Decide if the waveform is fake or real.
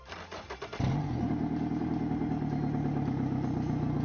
real